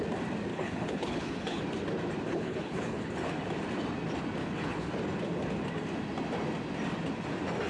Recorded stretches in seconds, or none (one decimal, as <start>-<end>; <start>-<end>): 0.0-0.5; 1.6-2.3; 3.1-4.4; 4.9-7.7